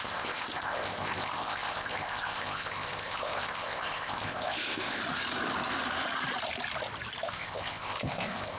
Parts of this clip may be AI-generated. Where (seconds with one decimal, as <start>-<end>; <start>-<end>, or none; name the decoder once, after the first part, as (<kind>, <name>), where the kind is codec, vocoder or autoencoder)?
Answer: 0.0-5.0 (codec, ZipCodec); 7.2-8.6